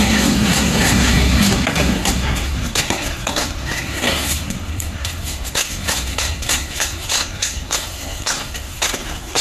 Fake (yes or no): yes